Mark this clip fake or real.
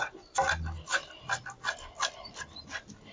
real